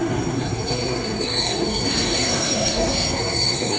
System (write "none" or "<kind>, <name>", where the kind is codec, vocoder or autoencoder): codec, SNAC